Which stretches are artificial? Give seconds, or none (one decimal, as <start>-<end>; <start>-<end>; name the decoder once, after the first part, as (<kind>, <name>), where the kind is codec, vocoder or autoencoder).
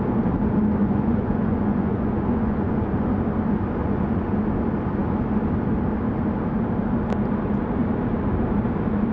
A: 0.8-3.1 (vocoder, Vocos); 3.8-4.3